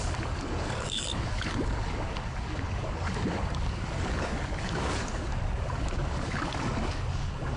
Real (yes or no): no